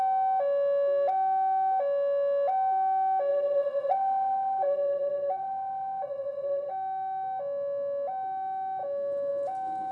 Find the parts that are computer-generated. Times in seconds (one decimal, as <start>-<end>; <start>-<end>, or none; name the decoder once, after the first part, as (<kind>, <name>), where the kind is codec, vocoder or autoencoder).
3.3-6.7 (vocoder, WaveNeXt)